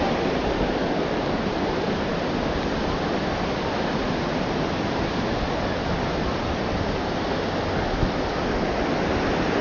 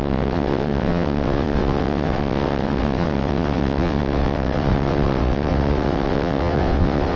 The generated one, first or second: second